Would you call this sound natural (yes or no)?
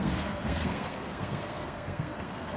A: no